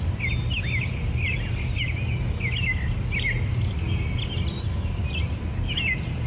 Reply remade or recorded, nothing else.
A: recorded